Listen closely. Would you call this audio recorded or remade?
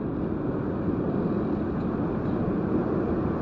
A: recorded